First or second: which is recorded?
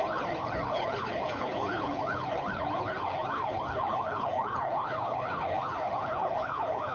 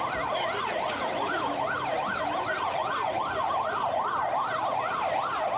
second